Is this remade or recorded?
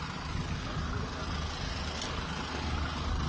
recorded